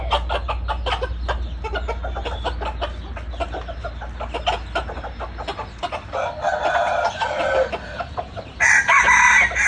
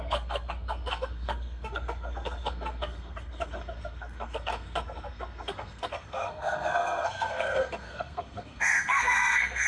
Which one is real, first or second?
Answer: first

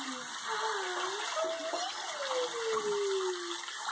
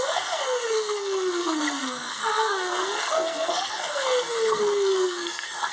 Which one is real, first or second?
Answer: first